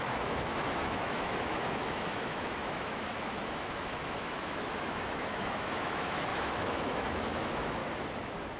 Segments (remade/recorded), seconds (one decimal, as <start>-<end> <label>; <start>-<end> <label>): 0.0-7.8 remade; 7.8-8.6 recorded